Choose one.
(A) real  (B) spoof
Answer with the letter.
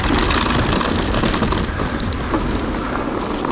A